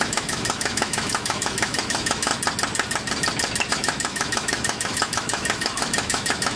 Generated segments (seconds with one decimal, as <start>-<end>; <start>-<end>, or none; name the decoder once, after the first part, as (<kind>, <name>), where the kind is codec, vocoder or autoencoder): 0.0-2.3 (autoencoder, DAC-VAE); 3.7-6.6